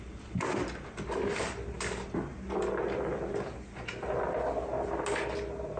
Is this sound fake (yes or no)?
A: no